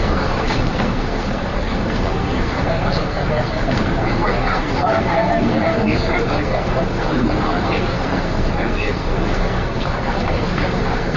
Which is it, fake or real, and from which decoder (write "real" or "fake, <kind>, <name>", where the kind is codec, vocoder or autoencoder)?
fake, codec, SNAC